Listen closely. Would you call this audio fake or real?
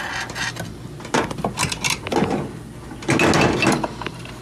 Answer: real